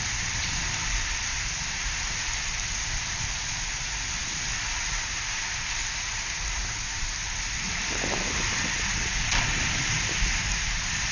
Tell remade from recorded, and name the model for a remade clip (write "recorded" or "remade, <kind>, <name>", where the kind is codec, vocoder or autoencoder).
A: remade, vocoder, BigVGAN v2